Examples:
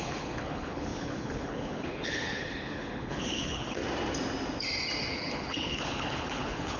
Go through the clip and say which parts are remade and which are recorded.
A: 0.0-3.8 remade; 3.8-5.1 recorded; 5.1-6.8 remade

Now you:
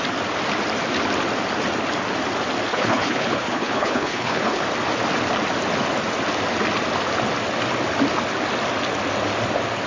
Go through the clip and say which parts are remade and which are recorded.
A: 0.0-2.7 recorded; 2.7-4.6 remade; 4.6-9.9 recorded